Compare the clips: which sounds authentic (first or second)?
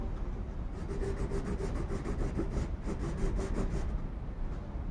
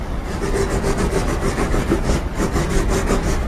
first